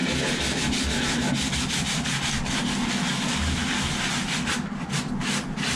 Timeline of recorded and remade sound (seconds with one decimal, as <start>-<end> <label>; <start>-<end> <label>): 0.0-5.8 recorded